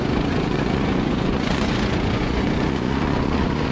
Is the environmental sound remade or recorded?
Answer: remade